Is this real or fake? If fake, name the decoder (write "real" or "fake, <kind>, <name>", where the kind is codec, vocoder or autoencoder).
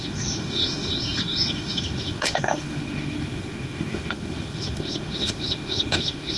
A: fake, autoencoder, DAC-VAE